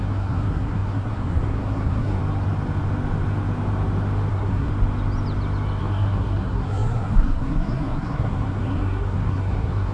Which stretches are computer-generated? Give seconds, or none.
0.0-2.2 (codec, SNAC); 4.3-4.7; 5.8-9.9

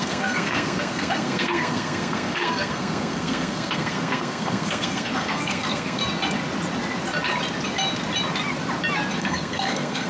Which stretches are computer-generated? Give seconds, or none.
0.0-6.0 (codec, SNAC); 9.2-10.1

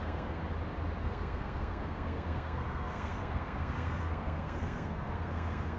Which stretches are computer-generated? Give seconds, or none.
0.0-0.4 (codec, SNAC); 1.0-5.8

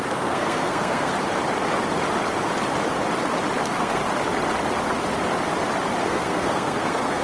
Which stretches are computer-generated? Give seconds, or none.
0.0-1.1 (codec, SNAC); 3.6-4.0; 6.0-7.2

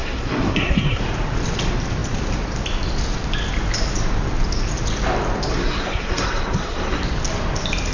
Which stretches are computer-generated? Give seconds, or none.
0.0-1.0 (codec, SNAC); 5.5-7.0

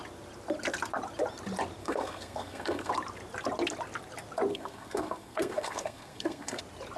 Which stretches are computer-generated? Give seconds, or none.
1.8-2.9 (codec, SNAC); 4.5-6.6

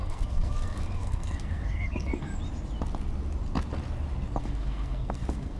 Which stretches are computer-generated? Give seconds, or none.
0.0-2.3 (codec, SNAC); 4.4-5.6